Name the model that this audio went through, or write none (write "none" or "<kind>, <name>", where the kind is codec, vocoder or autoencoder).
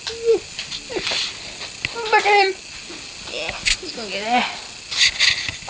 none